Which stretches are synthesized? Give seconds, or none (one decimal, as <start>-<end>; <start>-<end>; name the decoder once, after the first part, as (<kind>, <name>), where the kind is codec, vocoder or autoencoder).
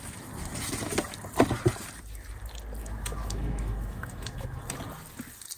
2.8-4.6 (autoencoder, DAC-VAE)